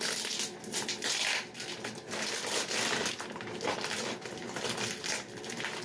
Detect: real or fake real